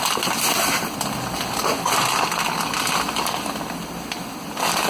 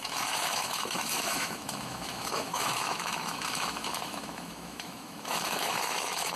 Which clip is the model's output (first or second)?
second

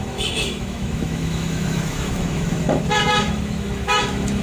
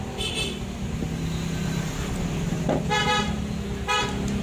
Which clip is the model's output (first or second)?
first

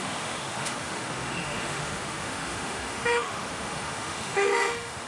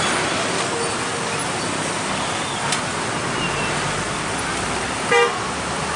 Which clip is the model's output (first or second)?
first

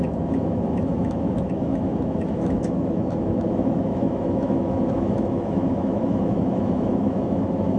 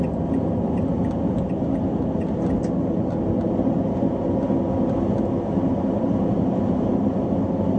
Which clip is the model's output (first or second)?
first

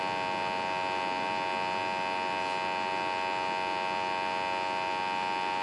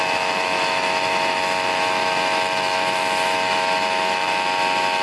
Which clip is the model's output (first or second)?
second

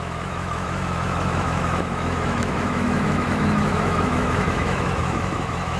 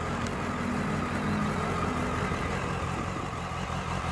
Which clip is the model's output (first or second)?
first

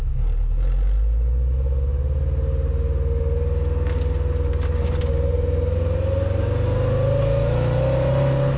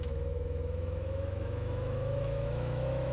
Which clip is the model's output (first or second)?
second